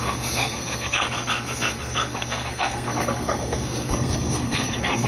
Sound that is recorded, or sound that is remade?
remade